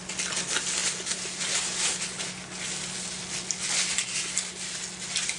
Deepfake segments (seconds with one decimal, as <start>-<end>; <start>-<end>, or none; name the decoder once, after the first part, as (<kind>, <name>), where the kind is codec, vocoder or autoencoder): none